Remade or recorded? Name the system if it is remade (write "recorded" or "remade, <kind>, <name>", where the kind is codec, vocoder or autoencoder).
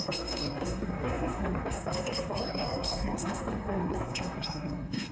remade, codec, SNAC